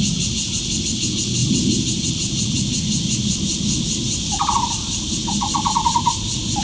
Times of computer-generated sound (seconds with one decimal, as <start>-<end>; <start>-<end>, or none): none